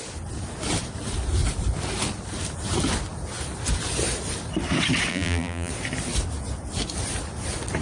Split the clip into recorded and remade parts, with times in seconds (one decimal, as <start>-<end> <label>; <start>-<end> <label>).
0.0-5.1 recorded; 5.1-5.7 remade; 5.7-7.8 recorded